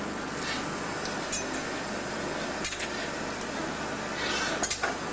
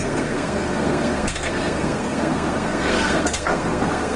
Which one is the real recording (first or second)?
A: first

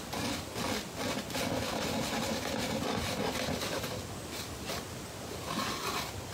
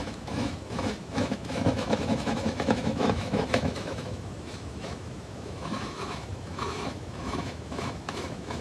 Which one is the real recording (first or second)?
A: first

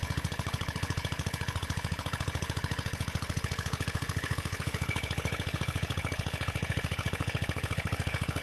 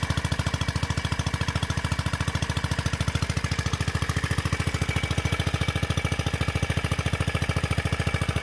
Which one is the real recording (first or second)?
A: second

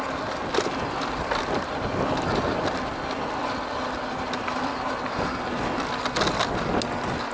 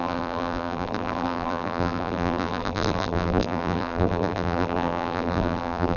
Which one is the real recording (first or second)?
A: first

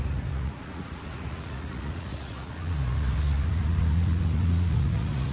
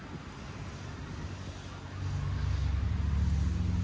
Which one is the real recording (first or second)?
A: second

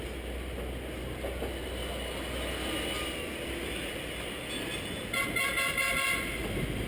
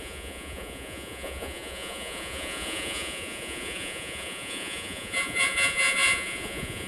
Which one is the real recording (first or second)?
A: first